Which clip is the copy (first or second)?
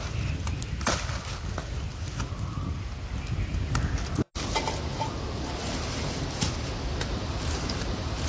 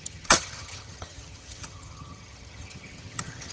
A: second